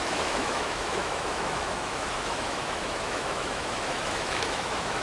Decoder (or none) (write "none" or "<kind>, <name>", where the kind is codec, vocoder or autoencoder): autoencoder, DAC-VAE